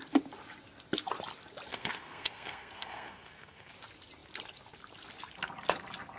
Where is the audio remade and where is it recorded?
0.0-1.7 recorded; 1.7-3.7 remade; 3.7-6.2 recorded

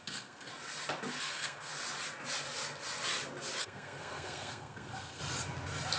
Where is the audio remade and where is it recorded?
0.0-0.5 remade; 0.5-1.2 recorded; 1.2-1.7 remade; 1.7-3.6 recorded; 3.6-5.2 remade; 5.2-6.0 recorded

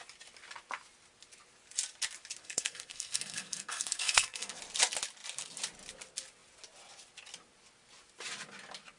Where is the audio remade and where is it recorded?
0.0-2.4 recorded; 2.4-4.6 remade; 4.6-9.0 recorded

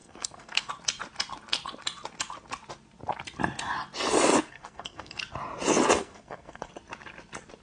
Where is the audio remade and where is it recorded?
0.0-0.7 remade; 0.7-4.5 recorded; 4.5-5.2 remade; 5.2-6.0 recorded; 6.0-6.7 remade; 6.7-7.6 recorded

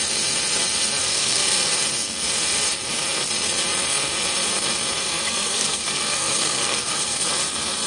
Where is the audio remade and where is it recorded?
0.0-1.0 recorded; 1.0-1.7 remade; 1.7-5.0 recorded; 5.0-7.3 remade; 7.3-7.9 recorded

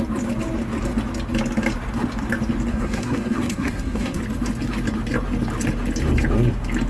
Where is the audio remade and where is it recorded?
0.0-2.7 recorded; 2.7-4.2 remade; 4.2-6.9 recorded

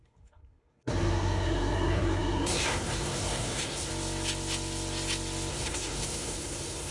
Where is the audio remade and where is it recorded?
0.0-3.9 remade; 3.9-5.5 recorded; 5.5-6.9 remade

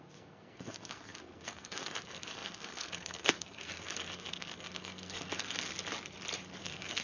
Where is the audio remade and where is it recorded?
0.0-5.7 remade; 5.7-6.6 recorded; 6.6-7.0 remade